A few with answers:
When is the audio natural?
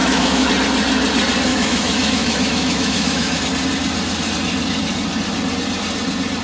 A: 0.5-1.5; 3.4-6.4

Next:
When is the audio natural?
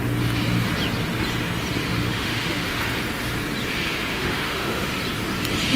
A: 0.0-1.8; 2.8-4.1; 4.9-5.8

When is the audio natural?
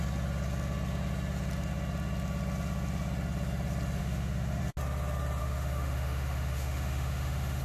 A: 0.0-4.0; 4.6-5.4